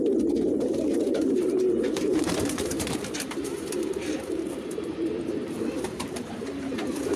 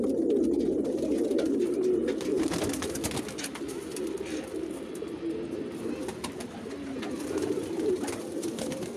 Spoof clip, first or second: first